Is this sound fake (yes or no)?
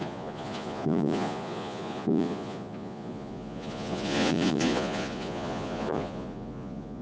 yes